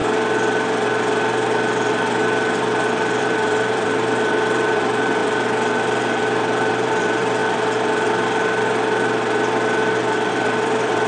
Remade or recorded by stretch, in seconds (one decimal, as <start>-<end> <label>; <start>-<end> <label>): 0.0-3.2 recorded; 3.2-5.2 remade; 5.2-6.2 recorded; 6.2-7.4 remade; 7.4-10.3 recorded; 10.3-11.1 remade